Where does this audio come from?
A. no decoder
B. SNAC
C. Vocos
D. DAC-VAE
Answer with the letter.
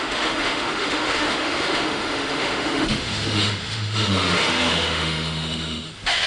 D